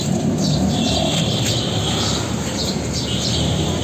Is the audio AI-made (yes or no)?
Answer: yes